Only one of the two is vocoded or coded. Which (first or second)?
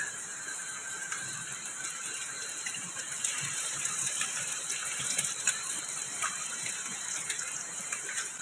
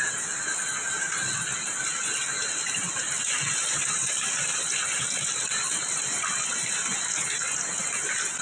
first